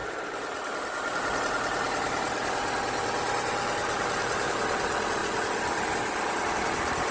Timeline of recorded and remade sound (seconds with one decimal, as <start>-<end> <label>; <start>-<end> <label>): 0.0-1.4 remade; 1.4-3.8 recorded; 3.8-4.5 remade; 4.5-7.1 recorded